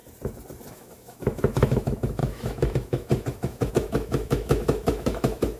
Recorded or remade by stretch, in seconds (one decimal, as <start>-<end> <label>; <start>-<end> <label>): 0.0-0.7 recorded; 0.7-5.6 remade